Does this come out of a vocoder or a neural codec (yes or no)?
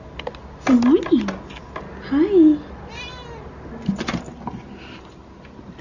no